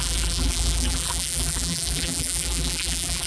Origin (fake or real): fake